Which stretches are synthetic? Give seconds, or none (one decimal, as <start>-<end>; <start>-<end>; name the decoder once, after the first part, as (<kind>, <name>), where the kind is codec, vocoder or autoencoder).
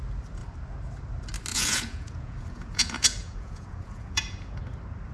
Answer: 1.5-4.6 (vocoder, Vocos)